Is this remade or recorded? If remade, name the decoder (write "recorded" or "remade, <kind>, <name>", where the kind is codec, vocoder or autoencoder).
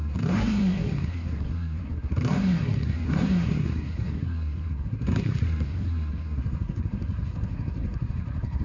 remade, codec, SNAC